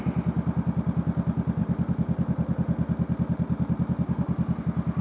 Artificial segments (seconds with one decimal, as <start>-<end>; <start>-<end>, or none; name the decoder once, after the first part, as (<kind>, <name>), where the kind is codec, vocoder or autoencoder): none

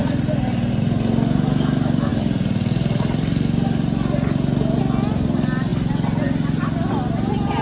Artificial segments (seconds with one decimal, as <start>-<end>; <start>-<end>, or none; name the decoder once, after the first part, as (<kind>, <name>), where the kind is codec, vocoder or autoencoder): none

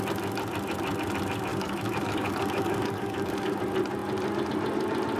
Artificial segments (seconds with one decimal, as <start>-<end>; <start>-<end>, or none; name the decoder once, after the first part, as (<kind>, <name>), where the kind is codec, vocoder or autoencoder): 1.5-3.6 (codec, DAC)

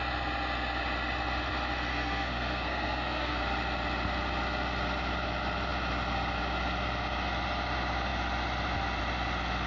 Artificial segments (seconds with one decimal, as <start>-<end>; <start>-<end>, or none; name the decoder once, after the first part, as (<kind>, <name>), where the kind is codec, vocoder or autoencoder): 1.9-3.4 (codec, SNAC)

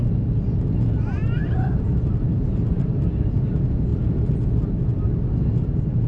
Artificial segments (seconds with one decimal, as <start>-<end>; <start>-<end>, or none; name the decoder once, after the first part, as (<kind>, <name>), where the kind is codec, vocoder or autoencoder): 1.4-3.1 (vocoder, BigVGAN v2)

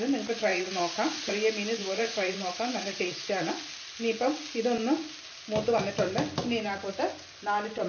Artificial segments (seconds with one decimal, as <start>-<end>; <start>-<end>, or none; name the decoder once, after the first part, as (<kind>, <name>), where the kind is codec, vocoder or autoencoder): 0.5-1.3 (vocoder, Vocos); 1.8-3.5